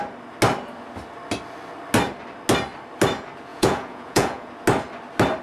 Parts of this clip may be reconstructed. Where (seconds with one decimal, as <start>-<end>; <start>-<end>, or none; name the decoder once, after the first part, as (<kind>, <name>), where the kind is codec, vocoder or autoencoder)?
3.5-4.5 (vocoder, Vocos)